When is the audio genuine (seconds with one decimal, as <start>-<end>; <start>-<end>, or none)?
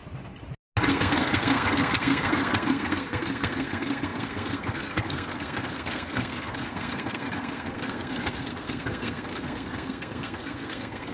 0.0-0.9